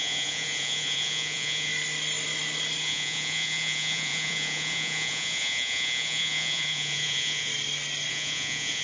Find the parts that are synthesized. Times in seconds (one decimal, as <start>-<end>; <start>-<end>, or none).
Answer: 0.0-1.7; 2.8-7.5; 8.1-8.8